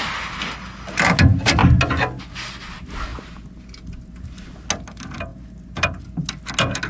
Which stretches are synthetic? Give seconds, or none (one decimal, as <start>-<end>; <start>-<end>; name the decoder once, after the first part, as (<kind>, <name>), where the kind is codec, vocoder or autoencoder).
none